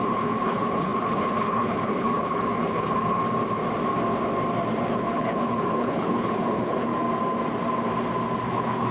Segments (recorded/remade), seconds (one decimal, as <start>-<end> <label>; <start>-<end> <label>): 0.0-3.2 remade; 3.2-4.9 recorded; 4.9-6.9 remade; 6.9-8.5 recorded; 8.5-8.9 remade